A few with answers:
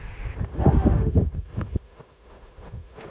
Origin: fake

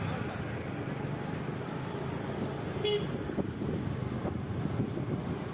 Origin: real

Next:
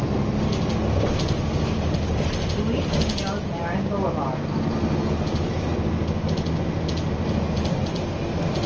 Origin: real